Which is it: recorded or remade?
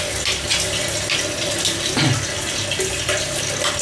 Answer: recorded